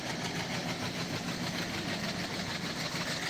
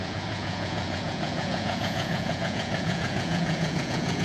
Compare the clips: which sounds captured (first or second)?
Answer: first